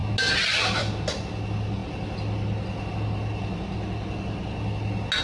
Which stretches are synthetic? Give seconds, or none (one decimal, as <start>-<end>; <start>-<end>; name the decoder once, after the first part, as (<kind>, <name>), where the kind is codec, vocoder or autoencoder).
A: none